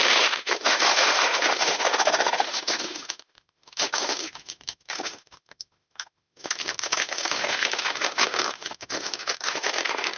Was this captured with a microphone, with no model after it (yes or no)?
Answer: no